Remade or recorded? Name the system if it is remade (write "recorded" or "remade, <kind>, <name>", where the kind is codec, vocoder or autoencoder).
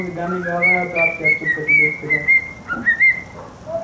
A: recorded